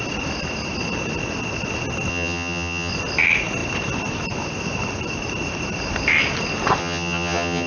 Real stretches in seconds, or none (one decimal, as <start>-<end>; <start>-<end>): 0.0-2.1; 2.9-6.8